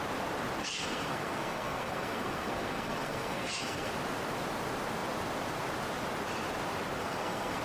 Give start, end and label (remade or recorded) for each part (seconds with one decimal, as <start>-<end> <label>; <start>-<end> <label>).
0.0-0.6 recorded; 0.6-3.9 remade; 3.9-7.0 recorded; 7.0-7.6 remade